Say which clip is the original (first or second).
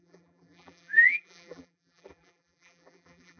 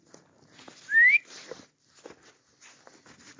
second